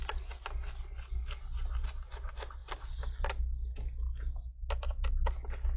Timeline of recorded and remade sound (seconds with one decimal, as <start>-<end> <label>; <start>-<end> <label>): 0.0-5.8 recorded